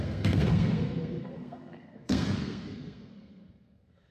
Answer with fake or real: fake